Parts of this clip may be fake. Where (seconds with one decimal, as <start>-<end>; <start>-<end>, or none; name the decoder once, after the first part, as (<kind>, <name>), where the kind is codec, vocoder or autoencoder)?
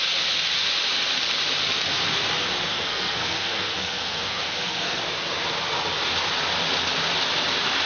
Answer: 2.7-5.0 (codec, SNAC)